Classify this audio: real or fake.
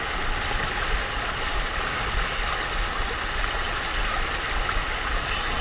real